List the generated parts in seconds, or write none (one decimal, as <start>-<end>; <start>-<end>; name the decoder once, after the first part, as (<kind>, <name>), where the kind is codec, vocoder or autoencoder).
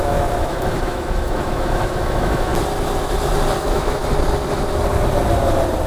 0.0-2.5 (autoencoder, DAC-VAE); 3.6-4.0